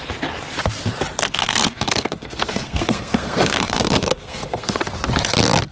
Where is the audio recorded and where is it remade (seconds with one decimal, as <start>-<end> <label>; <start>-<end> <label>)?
0.0-1.4 recorded; 1.4-4.8 remade; 4.8-5.7 recorded